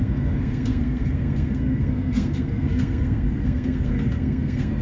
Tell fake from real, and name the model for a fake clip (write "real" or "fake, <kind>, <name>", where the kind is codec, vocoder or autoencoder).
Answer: fake, codec, SNAC